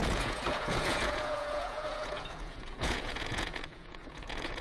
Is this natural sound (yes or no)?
no